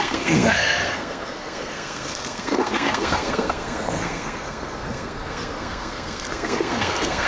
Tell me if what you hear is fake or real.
fake